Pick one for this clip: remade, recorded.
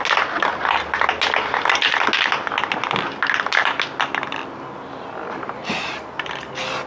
recorded